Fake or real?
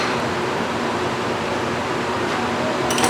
fake